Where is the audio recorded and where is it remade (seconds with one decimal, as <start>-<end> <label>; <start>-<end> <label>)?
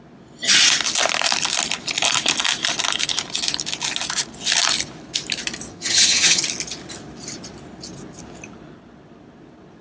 0.0-5.7 recorded; 5.7-6.4 remade; 6.4-9.8 recorded